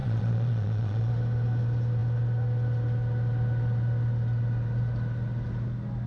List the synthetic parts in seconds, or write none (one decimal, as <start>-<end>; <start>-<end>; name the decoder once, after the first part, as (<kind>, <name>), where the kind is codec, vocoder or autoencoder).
0.0-1.1 (vocoder, Vocos)